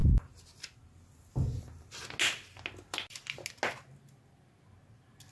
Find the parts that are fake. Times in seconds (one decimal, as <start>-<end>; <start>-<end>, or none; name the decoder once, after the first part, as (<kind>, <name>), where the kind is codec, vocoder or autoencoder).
none